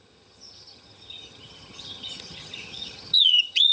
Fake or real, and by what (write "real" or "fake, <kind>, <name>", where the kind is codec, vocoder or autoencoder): fake, vocoder, HiFi-GAN